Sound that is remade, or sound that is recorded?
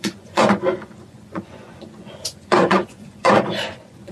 remade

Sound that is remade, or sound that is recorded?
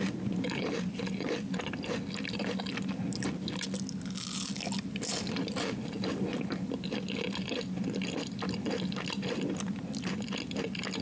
recorded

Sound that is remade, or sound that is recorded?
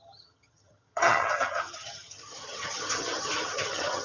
remade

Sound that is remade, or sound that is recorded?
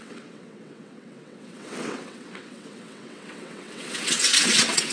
remade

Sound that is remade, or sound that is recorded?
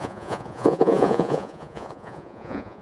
remade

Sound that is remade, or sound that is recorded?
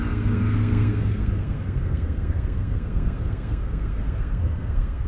remade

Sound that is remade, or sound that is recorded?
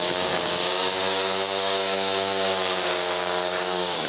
remade